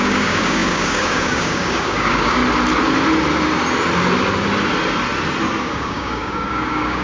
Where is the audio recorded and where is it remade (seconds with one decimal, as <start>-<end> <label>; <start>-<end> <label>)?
0.0-2.4 remade; 2.4-5.6 recorded; 5.6-7.0 remade